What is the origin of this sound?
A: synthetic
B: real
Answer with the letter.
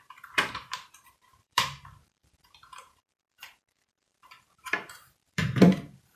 A